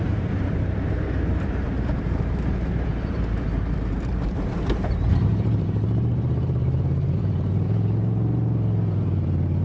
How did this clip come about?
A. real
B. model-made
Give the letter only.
B